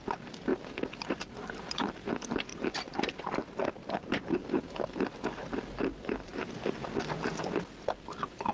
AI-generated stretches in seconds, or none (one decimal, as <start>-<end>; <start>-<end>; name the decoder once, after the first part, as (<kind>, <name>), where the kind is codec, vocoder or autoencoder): none